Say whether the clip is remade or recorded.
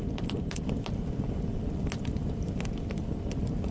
recorded